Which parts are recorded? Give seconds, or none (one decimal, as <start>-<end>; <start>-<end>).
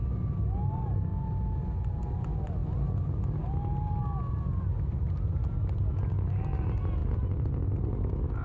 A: 0.0-8.4